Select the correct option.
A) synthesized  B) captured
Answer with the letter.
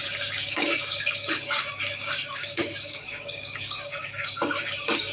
A